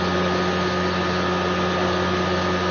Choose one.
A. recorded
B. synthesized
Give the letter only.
A